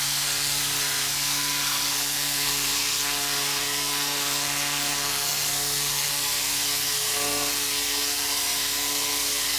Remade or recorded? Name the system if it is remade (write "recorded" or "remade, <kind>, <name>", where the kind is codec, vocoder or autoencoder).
remade, codec, SNAC